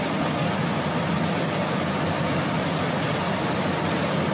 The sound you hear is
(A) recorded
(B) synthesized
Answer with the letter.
A